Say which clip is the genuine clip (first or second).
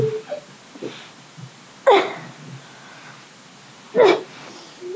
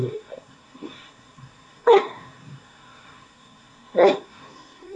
first